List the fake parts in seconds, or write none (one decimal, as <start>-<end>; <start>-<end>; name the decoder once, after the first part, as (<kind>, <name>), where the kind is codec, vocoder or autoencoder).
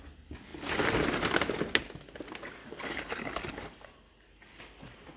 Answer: 2.6-3.9 (codec, DAC)